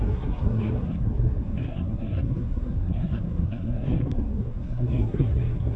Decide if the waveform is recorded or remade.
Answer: remade